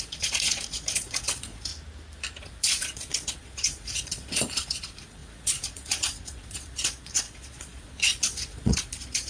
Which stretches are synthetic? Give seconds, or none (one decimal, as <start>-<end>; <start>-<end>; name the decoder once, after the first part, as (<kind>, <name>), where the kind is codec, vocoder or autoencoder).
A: 0.0-1.7 (vocoder, Vocos); 2.4-9.3